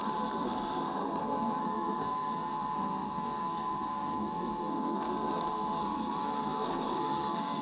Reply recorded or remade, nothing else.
remade